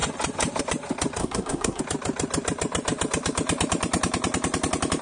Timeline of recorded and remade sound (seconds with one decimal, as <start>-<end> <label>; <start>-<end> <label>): 0.0-1.2 recorded; 1.2-1.8 remade; 1.8-5.0 recorded